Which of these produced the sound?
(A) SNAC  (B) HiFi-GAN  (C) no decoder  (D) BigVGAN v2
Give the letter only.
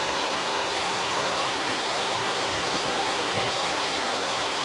A